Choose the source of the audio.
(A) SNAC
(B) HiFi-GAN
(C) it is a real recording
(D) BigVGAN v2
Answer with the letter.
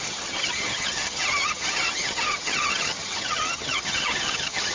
B